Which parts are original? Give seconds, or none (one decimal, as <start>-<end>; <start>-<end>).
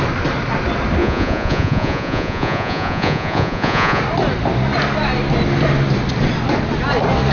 0.0-1.0; 4.0-7.3